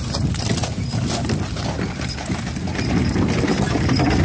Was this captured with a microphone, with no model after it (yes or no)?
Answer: yes